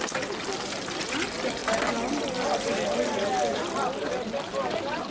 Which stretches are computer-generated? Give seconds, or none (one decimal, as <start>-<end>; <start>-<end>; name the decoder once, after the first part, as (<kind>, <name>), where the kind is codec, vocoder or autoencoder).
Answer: none